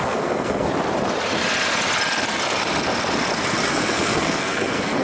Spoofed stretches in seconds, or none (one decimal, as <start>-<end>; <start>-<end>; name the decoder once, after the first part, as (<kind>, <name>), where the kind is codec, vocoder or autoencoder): 0.0-0.7 (codec, SNAC); 3.7-5.0